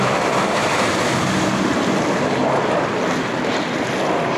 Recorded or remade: recorded